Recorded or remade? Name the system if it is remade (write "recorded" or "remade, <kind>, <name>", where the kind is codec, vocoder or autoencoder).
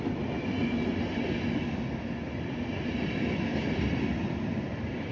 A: recorded